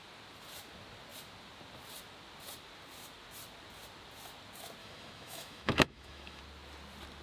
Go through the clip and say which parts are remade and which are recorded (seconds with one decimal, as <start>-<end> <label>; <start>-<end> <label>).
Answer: 0.0-4.8 recorded; 4.8-6.4 remade; 6.4-7.2 recorded